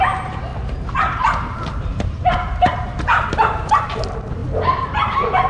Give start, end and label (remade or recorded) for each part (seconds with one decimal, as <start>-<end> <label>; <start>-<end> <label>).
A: 0.0-4.4 remade; 4.4-4.9 recorded; 4.9-5.5 remade